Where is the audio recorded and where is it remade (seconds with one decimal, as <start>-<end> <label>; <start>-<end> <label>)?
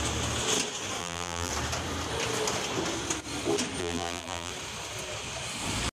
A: 0.0-1.0 recorded; 1.0-1.5 remade; 1.5-3.8 recorded; 3.8-4.5 remade; 4.5-5.9 recorded